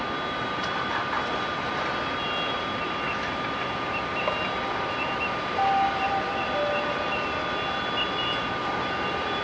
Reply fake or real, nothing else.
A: real